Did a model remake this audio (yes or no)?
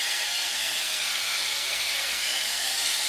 yes